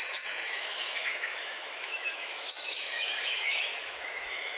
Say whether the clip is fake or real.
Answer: fake